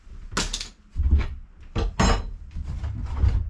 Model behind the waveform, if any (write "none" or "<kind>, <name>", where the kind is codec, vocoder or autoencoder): none